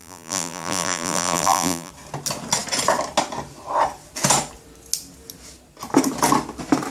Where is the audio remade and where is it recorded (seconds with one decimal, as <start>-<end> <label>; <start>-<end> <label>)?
0.0-1.9 remade; 1.9-6.9 recorded